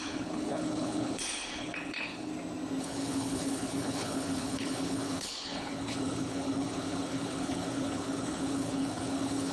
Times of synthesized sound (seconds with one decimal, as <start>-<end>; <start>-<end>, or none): 0.0-2.3; 2.8-9.5